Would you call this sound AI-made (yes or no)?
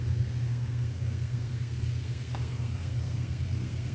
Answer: yes